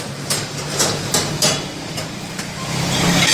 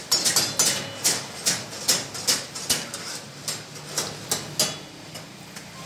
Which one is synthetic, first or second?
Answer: first